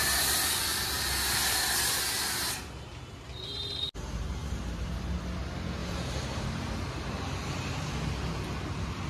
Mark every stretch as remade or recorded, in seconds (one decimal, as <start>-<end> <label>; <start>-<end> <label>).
0.0-4.4 recorded; 4.4-5.1 remade; 5.1-5.8 recorded; 5.8-6.7 remade; 6.7-9.1 recorded